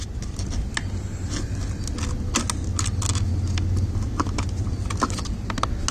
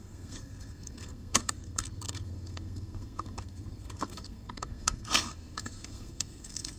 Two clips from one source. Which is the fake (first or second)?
second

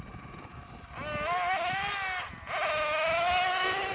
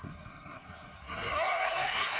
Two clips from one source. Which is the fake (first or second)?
second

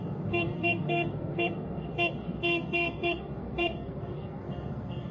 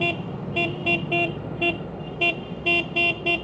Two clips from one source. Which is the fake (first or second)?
first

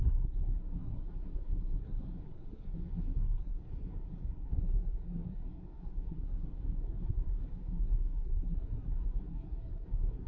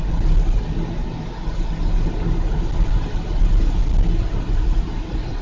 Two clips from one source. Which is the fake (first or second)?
first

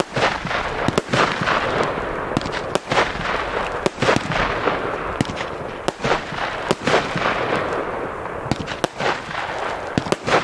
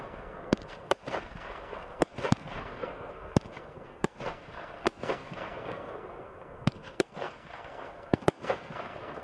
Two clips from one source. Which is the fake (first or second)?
second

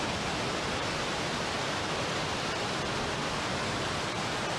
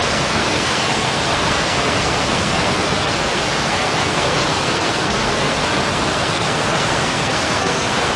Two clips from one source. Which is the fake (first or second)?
second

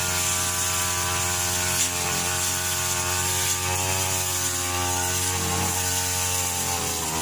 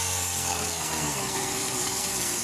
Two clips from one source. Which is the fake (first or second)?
second